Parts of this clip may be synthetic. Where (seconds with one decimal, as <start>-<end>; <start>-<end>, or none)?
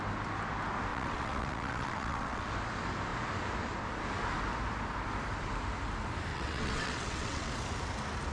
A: 0.9-2.5; 6.3-7.5